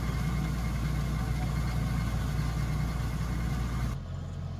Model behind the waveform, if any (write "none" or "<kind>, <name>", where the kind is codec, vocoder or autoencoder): none